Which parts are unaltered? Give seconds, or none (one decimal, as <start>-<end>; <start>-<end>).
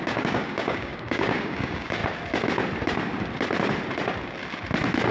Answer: 2.0-5.1